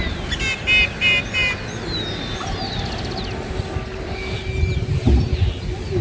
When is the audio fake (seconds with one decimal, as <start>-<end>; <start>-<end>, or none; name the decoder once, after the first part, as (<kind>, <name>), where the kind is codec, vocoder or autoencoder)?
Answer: none